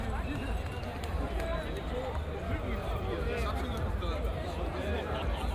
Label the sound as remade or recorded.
remade